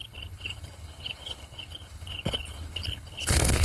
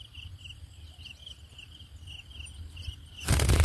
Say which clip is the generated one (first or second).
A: first